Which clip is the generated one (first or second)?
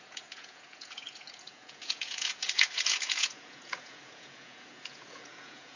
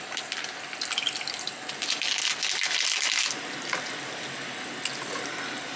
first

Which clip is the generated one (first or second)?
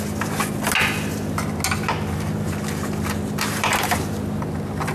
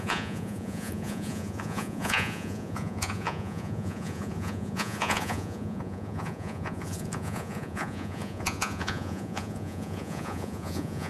second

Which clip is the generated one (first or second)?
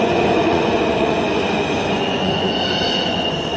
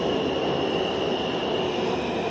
first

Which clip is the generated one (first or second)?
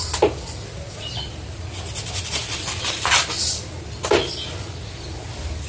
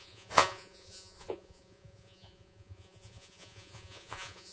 second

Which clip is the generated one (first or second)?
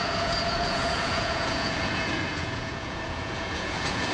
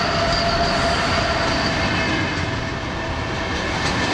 first